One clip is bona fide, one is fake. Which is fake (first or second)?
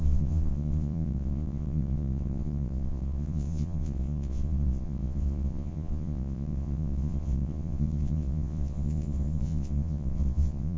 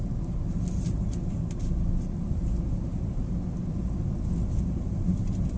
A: first